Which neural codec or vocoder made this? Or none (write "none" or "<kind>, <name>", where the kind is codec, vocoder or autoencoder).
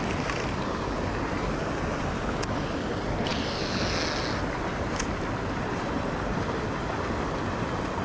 none